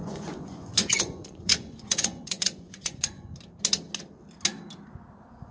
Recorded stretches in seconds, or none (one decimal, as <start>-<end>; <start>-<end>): 3.3-5.5